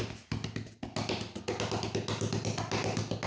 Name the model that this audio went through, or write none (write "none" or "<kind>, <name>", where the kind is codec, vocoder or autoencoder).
none